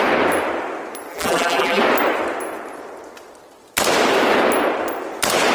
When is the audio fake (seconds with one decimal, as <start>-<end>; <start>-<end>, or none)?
1.1-1.8